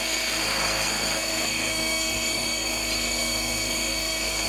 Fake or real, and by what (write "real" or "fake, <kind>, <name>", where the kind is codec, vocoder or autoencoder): fake, codec, SNAC